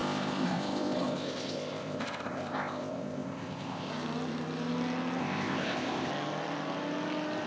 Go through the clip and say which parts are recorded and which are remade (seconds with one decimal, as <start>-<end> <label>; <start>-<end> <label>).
0.0-3.9 remade; 3.9-5.2 recorded; 5.2-6.1 remade; 6.1-7.5 recorded

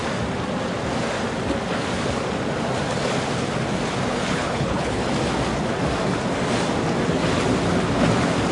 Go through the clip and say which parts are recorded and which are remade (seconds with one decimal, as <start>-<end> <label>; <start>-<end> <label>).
0.0-4.1 recorded; 4.1-5.1 remade; 5.1-8.5 recorded

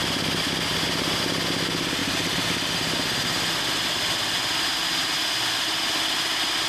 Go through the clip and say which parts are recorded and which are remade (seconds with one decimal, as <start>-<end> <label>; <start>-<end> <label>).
0.0-6.7 recorded

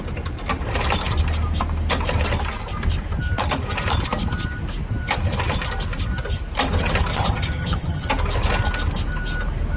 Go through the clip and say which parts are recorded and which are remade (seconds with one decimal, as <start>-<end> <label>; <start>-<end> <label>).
0.0-7.1 recorded; 7.1-8.1 remade; 8.1-9.8 recorded

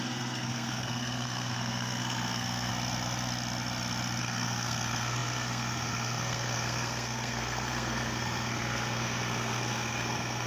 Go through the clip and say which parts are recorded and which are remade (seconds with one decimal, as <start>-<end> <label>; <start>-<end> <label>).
0.0-2.7 remade; 2.7-4.2 recorded; 4.2-10.5 remade